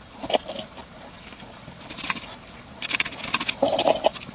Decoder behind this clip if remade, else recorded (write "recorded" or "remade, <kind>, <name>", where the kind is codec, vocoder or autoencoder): recorded